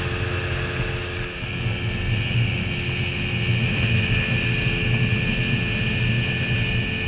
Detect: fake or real real